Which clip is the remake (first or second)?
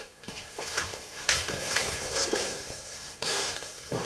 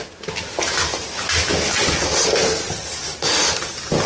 first